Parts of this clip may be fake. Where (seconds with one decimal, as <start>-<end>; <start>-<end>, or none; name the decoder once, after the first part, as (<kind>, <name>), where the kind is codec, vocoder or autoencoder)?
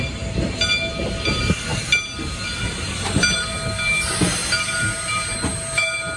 none